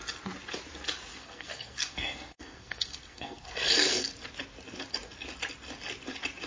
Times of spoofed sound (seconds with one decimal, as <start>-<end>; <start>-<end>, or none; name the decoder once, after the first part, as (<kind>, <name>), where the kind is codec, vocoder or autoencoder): 1.1-4.1 (codec, SNAC)